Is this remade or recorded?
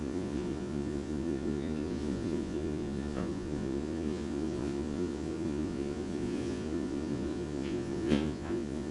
remade